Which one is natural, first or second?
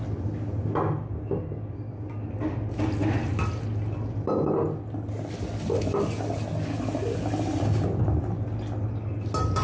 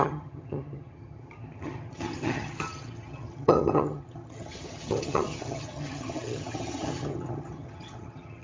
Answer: first